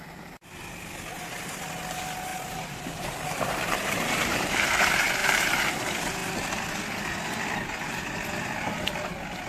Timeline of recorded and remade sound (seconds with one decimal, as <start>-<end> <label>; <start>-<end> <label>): 0.0-2.3 recorded; 2.3-4.5 remade; 4.5-5.2 recorded; 5.2-5.7 remade; 5.7-9.5 recorded